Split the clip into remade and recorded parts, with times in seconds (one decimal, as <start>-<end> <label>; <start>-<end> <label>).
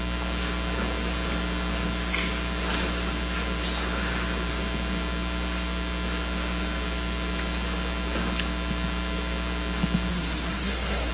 0.0-10.1 recorded; 10.1-11.1 remade